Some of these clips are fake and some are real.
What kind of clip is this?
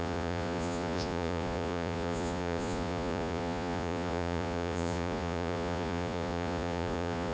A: fake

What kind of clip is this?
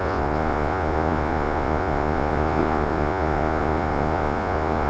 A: fake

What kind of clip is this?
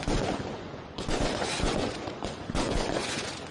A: fake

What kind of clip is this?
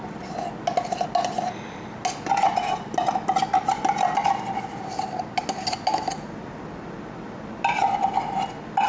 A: real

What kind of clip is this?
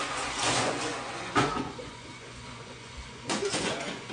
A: fake